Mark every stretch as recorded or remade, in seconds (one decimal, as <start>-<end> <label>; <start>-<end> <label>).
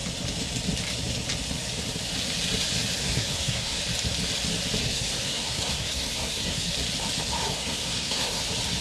0.0-3.0 recorded; 3.0-3.8 remade; 3.8-4.8 recorded; 4.8-6.7 remade; 6.7-7.4 recorded; 7.4-8.4 remade; 8.4-8.8 recorded